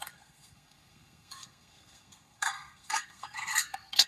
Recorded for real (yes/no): no